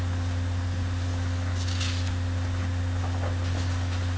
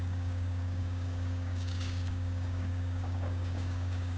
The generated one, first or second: second